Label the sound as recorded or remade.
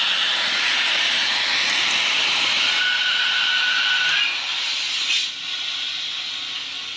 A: recorded